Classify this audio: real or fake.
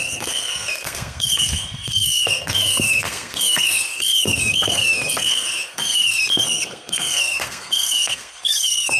fake